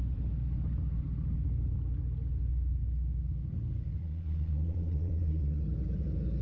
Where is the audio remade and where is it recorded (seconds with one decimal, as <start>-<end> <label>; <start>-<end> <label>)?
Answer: 0.0-4.0 recorded; 4.0-5.6 remade; 5.6-6.4 recorded